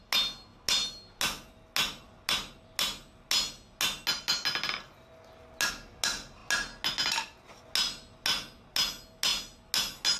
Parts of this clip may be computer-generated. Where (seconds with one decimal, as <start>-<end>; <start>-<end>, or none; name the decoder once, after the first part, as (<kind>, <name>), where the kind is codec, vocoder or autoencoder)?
none